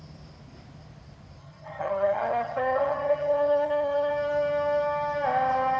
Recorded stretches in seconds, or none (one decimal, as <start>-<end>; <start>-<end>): 0.0-1.4; 4.1-5.8